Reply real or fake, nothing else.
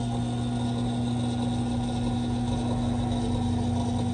real